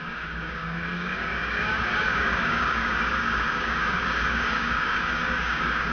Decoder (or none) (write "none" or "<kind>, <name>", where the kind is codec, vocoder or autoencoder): codec, DAC